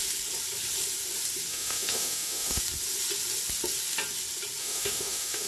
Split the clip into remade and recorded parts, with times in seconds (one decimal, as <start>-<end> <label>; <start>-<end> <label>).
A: 0.0-1.5 recorded; 1.5-2.6 remade; 2.6-4.6 recorded; 4.6-5.5 remade